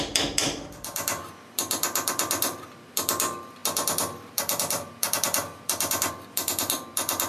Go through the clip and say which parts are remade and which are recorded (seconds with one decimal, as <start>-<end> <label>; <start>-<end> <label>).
0.0-7.3 remade